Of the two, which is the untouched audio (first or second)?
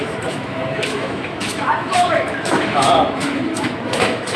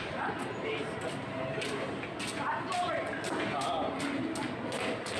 second